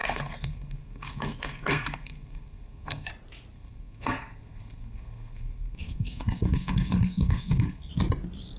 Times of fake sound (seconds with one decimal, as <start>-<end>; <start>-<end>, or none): 0.0-3.1; 3.5-7.9